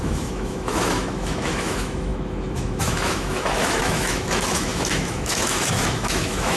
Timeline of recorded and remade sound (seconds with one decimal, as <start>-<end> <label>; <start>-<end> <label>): 0.0-6.6 remade